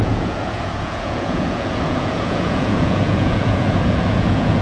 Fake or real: fake